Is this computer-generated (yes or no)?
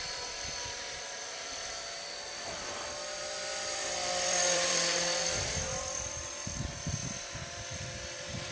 yes